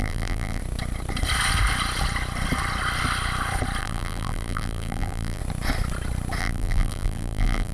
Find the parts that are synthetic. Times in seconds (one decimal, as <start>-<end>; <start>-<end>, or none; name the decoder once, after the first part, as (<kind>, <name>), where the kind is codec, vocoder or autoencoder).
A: 0.0-0.6 (vocoder, BigVGAN v2); 3.8-5.4; 6.4-7.7